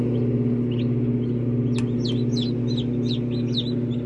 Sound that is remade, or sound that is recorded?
recorded